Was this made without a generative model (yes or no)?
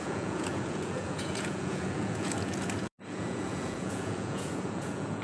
no